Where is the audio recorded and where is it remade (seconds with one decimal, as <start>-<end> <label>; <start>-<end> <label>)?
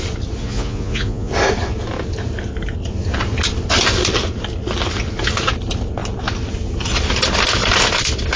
0.0-0.4 recorded; 0.4-1.3 remade; 1.3-8.4 recorded